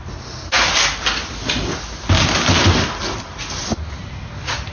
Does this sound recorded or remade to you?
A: recorded